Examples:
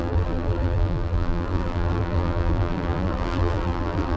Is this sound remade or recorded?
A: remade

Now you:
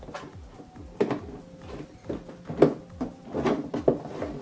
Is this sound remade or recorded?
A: recorded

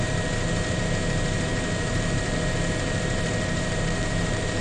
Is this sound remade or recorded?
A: remade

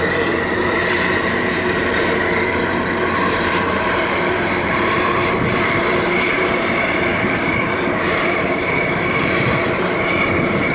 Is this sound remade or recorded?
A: remade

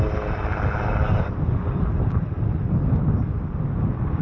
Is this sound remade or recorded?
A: recorded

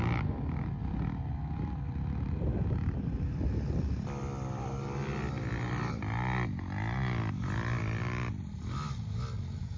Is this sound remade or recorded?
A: recorded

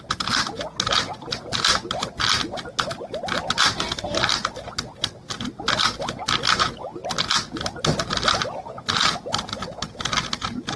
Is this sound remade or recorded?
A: recorded